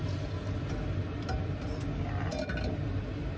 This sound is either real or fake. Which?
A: real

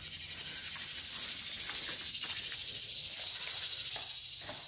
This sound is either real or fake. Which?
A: real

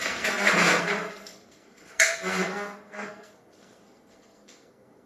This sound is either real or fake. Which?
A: fake